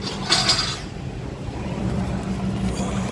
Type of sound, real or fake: real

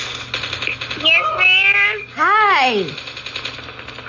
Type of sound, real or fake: real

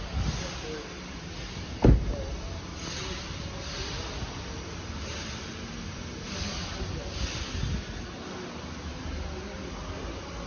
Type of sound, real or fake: real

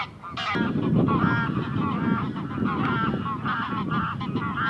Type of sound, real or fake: real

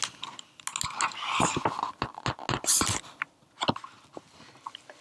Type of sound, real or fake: real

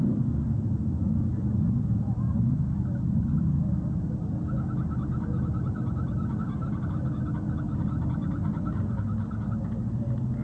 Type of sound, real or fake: real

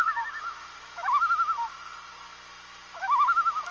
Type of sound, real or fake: real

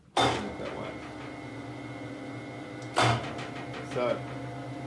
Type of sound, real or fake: real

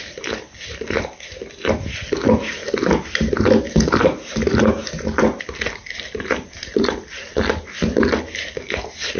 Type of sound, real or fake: real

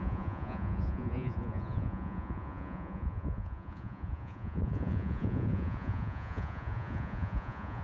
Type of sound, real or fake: fake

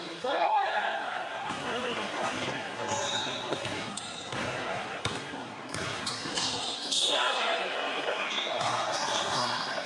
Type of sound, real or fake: fake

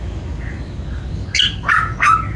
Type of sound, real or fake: fake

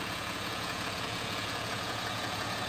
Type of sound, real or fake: fake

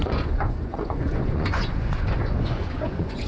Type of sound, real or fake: fake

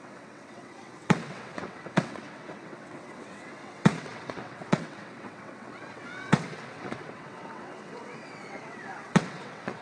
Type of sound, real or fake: fake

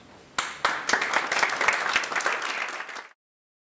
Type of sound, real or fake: real